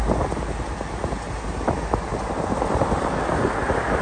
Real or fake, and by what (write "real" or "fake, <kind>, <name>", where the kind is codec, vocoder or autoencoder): real